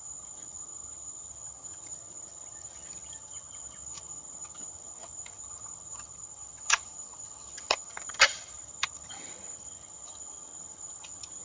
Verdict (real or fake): fake